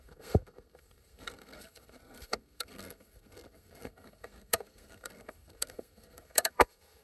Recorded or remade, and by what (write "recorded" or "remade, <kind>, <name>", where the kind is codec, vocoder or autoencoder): remade, codec, SNAC